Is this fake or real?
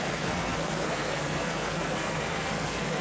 fake